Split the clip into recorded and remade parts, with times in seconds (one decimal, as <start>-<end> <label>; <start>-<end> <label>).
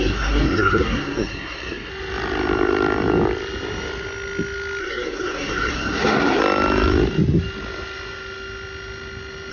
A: 0.0-1.9 remade; 1.9-4.8 recorded; 4.8-6.4 remade; 6.4-9.5 recorded